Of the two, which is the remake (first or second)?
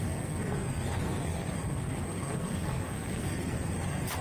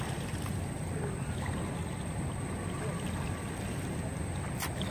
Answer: first